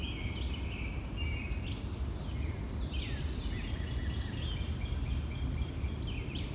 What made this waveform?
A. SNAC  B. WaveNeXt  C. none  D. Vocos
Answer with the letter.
C